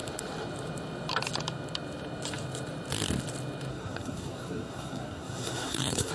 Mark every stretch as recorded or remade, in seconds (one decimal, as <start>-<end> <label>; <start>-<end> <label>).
0.0-3.7 recorded; 3.7-6.1 remade